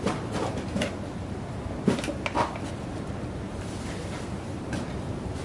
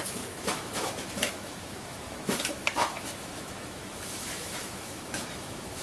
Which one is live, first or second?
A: first